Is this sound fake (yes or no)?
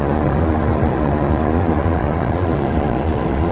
yes